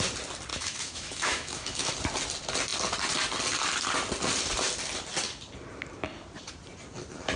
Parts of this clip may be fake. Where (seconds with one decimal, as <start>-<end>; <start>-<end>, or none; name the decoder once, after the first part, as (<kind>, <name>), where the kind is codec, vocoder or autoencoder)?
0.5-1.9 (autoencoder, DAC-VAE)